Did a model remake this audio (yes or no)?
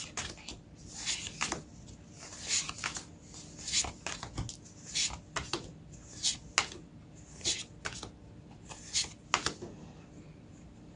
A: no